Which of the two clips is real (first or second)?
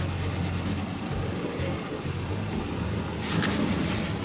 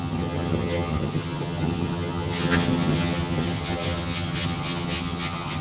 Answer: first